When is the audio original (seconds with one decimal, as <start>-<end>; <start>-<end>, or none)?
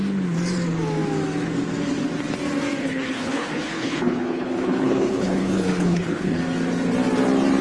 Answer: 0.0-2.8; 6.4-7.6